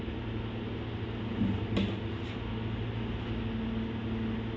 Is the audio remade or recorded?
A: recorded